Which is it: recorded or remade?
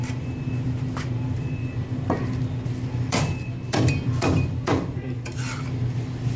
remade